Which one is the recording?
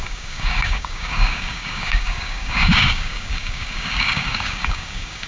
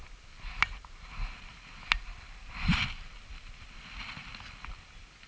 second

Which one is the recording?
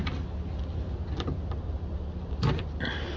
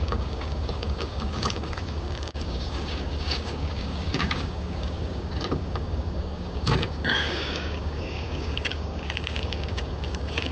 first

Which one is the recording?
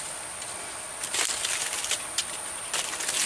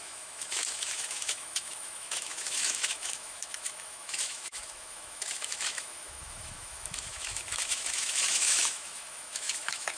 first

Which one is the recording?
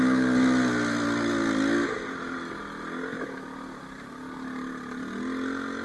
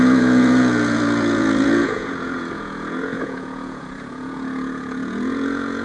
first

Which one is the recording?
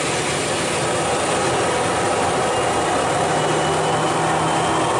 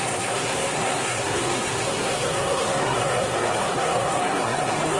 first